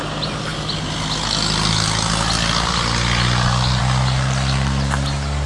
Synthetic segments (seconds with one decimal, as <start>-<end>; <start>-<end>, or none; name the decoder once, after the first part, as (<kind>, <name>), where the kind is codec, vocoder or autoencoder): none